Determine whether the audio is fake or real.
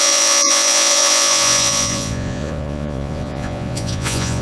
fake